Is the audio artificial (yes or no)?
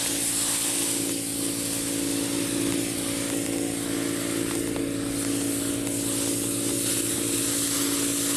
no